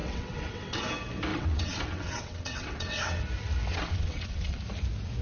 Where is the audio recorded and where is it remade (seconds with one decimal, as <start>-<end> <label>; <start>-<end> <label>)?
0.0-0.8 remade; 0.8-1.3 recorded; 1.3-3.2 remade; 3.2-3.7 recorded; 3.7-4.6 remade; 4.6-5.2 recorded